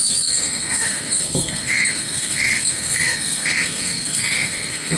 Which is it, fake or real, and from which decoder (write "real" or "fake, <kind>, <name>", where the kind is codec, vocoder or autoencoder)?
fake, codec, SNAC